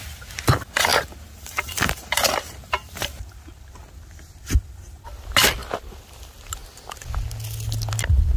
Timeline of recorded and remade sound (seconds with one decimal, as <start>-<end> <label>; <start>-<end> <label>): 0.0-0.9 recorded; 0.9-3.7 remade; 3.7-5.6 recorded; 5.6-6.1 remade; 6.1-8.4 recorded